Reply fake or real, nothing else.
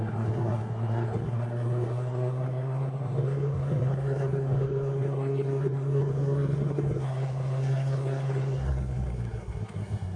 fake